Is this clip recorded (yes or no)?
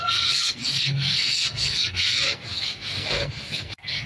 no